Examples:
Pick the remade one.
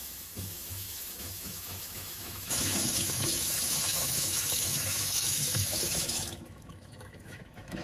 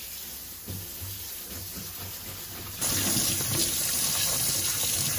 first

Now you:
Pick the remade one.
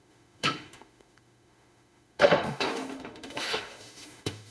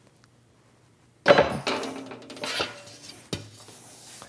first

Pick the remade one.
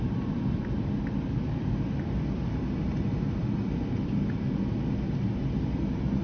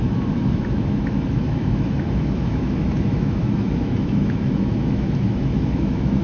second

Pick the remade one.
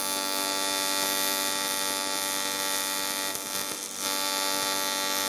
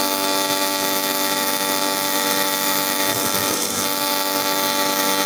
second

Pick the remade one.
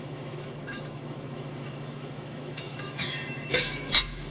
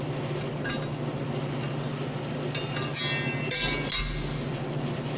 first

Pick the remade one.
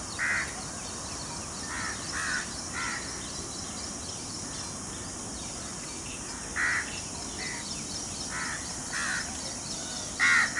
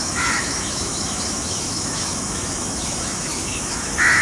second